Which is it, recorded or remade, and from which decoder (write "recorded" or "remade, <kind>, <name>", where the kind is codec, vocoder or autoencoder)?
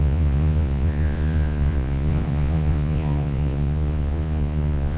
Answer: remade, vocoder, Vocos